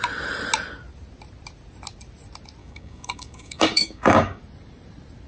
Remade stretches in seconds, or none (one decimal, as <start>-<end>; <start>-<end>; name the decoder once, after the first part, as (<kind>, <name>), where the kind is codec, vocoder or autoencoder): 2.6-4.4 (codec, DAC)

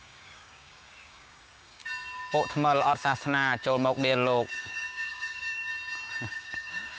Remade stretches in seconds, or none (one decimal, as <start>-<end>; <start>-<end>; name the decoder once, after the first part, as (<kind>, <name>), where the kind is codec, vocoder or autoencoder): 0.0-1.8 (codec, DAC); 2.5-5.7; 6.3-7.0